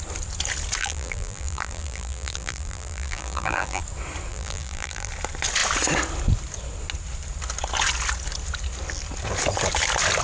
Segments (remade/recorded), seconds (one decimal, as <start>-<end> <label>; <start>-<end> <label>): 0.0-0.8 recorded; 0.8-3.8 remade; 3.8-4.3 recorded; 4.3-5.1 remade; 5.1-10.2 recorded